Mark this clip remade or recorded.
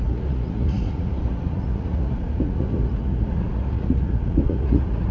remade